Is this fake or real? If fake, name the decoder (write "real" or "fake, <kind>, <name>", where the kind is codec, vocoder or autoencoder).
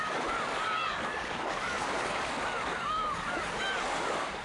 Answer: fake, codec, DAC